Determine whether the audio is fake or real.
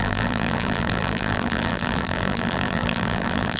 fake